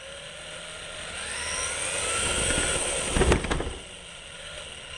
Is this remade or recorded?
recorded